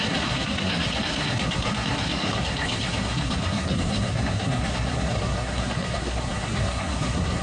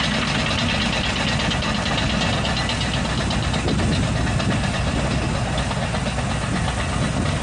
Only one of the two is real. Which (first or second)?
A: second